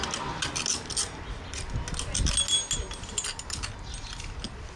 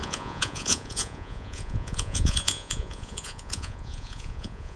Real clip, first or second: first